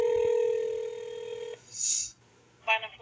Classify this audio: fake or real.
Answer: real